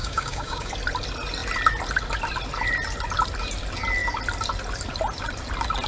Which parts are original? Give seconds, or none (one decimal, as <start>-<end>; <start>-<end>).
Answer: 0.7-5.9